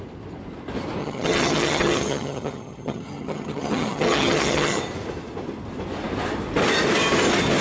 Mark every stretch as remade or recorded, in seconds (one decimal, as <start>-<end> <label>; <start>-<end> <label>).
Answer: 0.0-1.0 recorded; 1.0-4.8 remade; 4.8-7.6 recorded